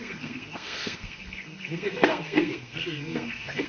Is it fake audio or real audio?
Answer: fake